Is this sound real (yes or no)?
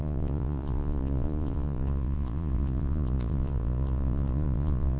no